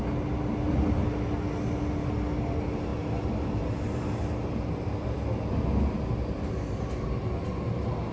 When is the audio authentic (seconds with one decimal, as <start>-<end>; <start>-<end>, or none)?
0.0-8.1